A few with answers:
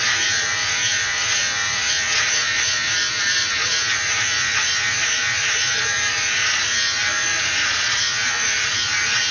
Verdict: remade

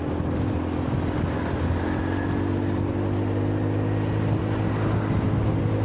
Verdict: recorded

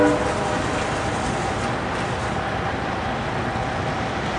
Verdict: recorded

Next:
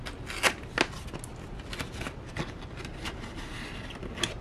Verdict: recorded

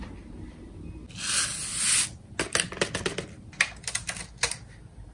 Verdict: recorded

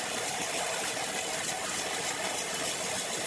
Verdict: recorded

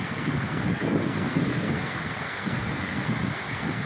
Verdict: remade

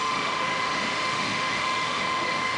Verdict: remade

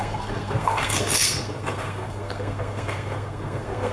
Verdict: remade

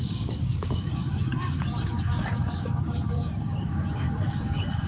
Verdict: remade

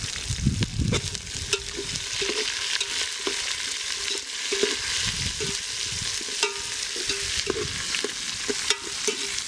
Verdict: recorded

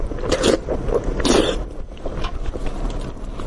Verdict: recorded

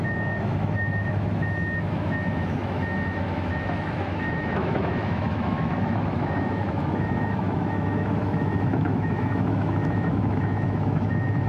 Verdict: remade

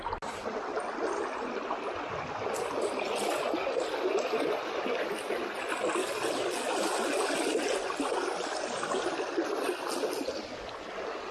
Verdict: recorded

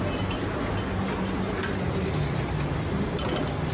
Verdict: recorded